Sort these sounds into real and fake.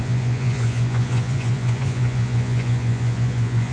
fake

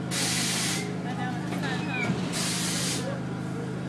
real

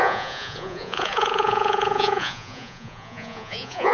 fake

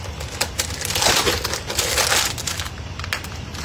real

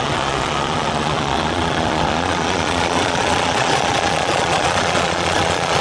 fake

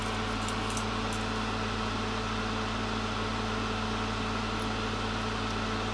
real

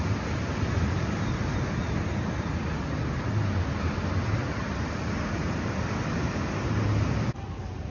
real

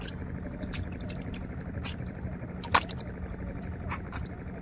real